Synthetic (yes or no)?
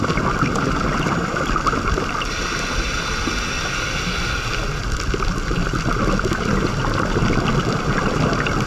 no